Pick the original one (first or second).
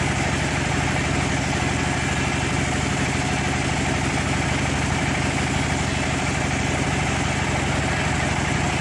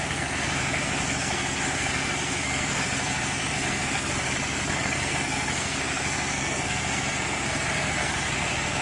first